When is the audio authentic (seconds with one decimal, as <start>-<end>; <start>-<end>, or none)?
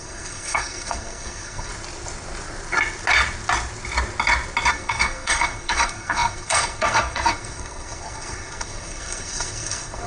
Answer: 1.7-4.7